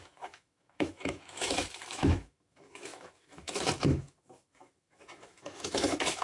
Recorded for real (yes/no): no